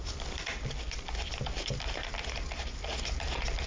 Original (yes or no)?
yes